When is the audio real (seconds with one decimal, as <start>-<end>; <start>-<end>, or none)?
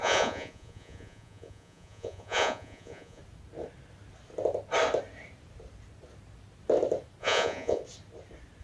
3.2-7.2; 7.8-8.6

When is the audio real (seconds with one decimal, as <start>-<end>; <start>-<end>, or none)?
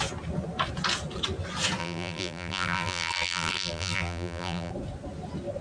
0.0-1.8; 4.7-5.6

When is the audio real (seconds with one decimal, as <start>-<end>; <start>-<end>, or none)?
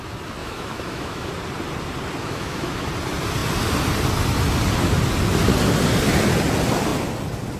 0.0-0.4; 1.3-2.2; 2.9-7.6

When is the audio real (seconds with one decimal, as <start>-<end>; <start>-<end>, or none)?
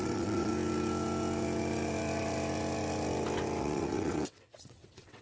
0.5-3.6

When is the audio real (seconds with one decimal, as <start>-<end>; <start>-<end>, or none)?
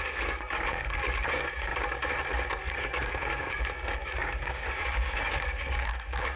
1.7-2.7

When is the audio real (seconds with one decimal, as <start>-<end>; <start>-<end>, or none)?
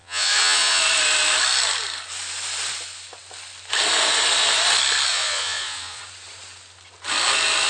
0.8-5.1; 6.0-7.7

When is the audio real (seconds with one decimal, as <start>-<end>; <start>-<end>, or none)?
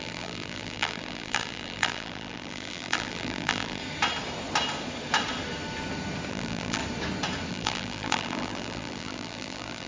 3.8-6.3; 6.8-7.5